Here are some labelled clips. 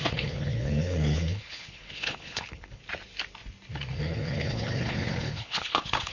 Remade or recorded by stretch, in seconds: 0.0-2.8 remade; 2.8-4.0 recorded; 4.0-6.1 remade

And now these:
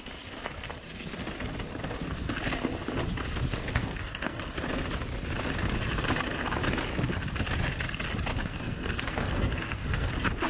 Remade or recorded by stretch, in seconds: 0.0-3.6 recorded; 3.6-4.4 remade; 4.4-8.3 recorded; 8.3-10.1 remade; 10.1-10.5 recorded

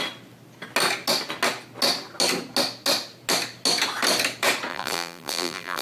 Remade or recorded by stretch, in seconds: 0.0-4.7 recorded; 4.7-5.8 remade

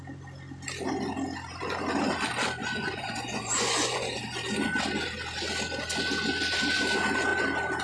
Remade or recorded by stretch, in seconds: 0.0-2.6 recorded; 2.6-4.2 remade; 4.2-7.8 recorded